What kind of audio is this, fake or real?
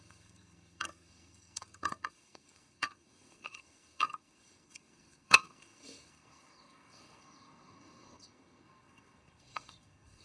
fake